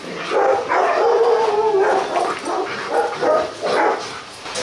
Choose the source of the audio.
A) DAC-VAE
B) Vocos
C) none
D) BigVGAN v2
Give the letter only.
C